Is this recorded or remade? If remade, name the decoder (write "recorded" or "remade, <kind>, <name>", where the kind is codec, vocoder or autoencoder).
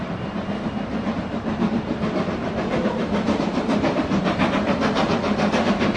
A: remade, vocoder, BigVGAN v2